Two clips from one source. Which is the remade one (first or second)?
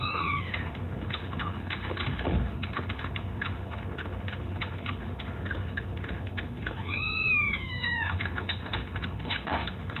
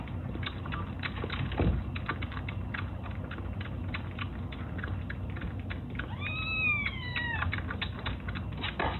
first